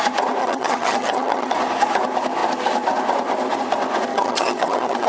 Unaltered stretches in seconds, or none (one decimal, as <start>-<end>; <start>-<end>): 0.0-0.4; 1.5-4.1